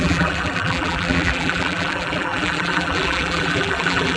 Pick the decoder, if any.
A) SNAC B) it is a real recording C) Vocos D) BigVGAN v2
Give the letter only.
D